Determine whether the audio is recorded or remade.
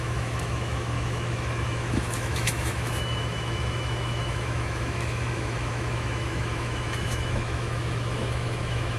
remade